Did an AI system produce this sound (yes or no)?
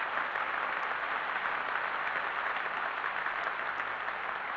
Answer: no